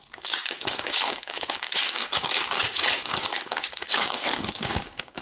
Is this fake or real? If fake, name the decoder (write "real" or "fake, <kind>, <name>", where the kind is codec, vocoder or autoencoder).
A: fake, codec, DAC